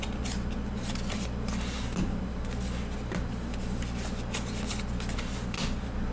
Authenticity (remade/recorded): recorded